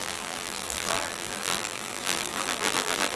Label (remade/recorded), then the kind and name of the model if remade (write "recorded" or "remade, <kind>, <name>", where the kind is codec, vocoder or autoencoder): remade, vocoder, BigVGAN v2